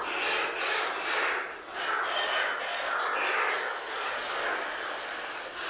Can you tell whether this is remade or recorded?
recorded